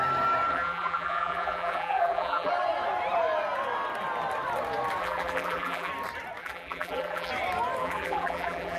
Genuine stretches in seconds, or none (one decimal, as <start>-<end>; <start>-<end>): 0.0-0.5; 2.5-5.0; 5.9-6.4; 7.3-7.8